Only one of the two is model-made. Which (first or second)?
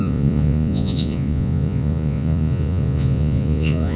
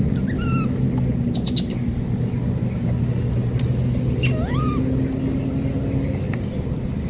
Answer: first